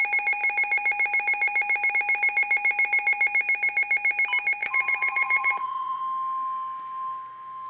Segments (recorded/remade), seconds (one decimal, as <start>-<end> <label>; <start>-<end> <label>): 0.0-4.6 recorded; 4.6-6.0 remade; 6.0-7.7 recorded